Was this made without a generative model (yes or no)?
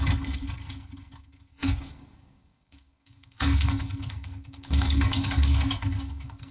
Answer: no